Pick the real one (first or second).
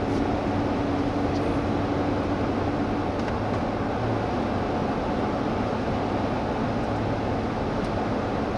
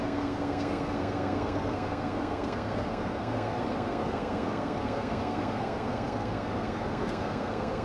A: first